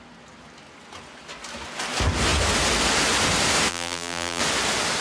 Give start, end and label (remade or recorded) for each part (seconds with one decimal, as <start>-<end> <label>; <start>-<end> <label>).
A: 0.0-3.7 recorded; 3.7-4.4 remade; 4.4-5.0 recorded